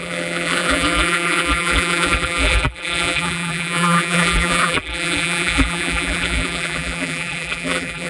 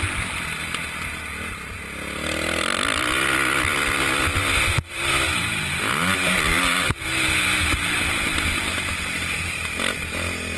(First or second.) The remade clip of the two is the first